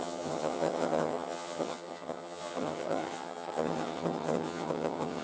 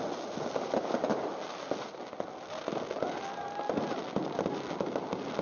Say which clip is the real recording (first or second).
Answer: second